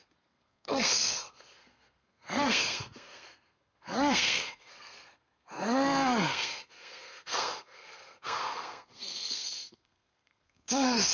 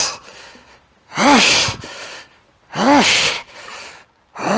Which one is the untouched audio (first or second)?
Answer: second